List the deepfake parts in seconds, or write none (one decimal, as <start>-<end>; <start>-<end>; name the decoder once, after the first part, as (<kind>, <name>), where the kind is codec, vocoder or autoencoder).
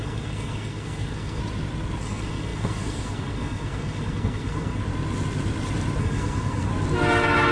0.0-1.4 (codec, SNAC); 2.0-4.8; 6.0-6.7